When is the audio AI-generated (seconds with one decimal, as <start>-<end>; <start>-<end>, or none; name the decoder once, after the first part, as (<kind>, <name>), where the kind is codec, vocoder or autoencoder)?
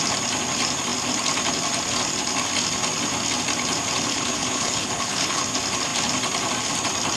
4.1-5.4 (codec, HILCodec)